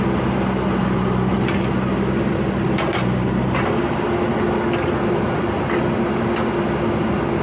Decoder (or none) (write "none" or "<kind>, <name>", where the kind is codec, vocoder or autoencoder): none